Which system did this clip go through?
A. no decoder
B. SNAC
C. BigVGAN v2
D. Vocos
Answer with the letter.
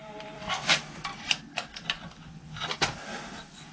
C